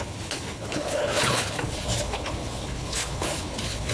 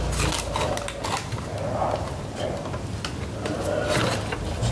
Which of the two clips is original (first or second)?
second